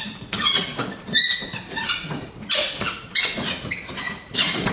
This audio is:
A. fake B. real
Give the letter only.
A